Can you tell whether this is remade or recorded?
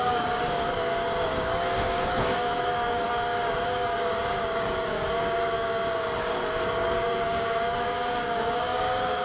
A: remade